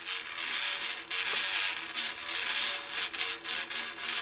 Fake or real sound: real